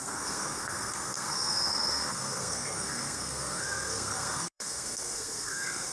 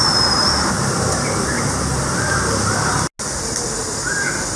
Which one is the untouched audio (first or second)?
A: second